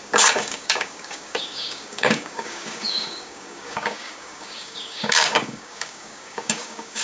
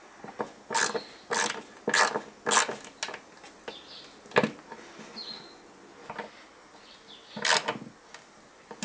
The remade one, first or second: first